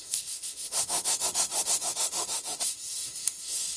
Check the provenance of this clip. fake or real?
fake